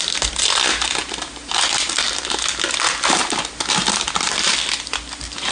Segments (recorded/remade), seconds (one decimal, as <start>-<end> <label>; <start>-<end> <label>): 0.0-5.5 recorded